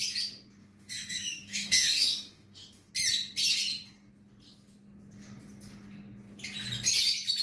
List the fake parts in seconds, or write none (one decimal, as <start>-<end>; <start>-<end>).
0.6-2.9